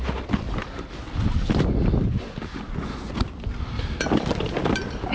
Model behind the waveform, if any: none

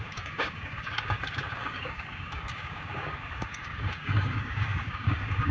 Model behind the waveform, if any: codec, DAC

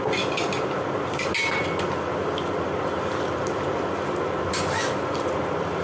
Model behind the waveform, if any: none